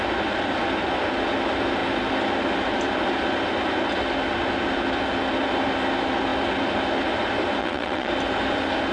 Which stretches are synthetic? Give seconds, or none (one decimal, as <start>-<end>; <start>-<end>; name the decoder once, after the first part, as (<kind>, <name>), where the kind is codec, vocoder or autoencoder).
7.6-8.1 (vocoder, WaveNeXt)

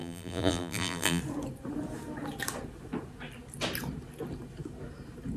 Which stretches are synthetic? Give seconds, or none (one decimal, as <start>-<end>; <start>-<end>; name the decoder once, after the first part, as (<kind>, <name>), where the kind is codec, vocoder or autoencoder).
0.0-1.2 (vocoder, BigVGAN v2)

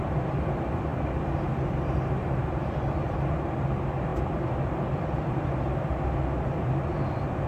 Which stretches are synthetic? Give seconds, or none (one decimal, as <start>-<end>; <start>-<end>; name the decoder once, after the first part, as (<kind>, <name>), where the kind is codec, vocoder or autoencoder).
0.0-7.5 (vocoder, BigVGAN v2)

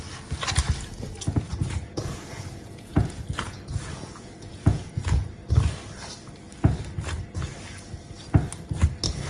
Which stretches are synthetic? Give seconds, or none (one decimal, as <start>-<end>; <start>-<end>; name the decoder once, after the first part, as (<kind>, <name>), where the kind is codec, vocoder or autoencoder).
1.6-5.3 (vocoder, Vocos)

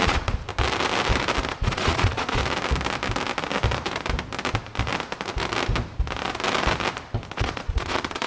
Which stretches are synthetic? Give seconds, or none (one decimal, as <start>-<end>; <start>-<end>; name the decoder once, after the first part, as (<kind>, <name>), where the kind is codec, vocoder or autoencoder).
0.0-0.5 (vocoder, Vocos); 1.5-2.4; 7.3-8.3